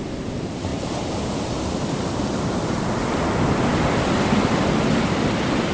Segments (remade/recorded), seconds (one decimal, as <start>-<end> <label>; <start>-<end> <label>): 0.0-5.7 recorded